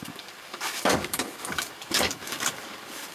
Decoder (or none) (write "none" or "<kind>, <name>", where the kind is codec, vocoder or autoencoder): codec, DAC